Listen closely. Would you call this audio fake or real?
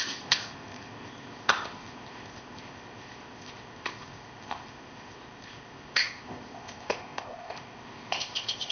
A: fake